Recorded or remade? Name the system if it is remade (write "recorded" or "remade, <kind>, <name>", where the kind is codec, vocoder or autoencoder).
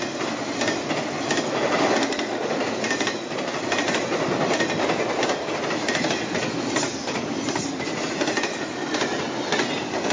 recorded